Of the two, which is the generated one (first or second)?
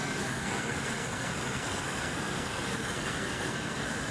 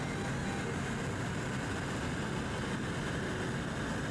first